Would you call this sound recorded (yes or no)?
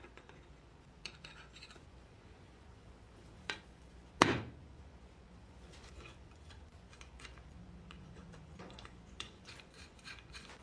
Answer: no